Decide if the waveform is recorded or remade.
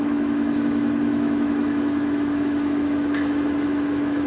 remade